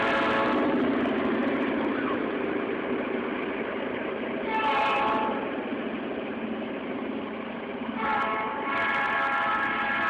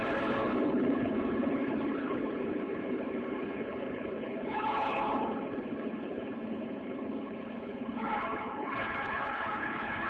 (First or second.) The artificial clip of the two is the second